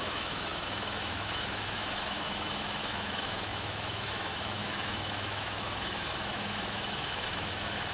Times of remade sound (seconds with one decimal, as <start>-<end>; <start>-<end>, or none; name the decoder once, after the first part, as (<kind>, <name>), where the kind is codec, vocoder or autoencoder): 0.0-7.9 (autoencoder, DAC-VAE)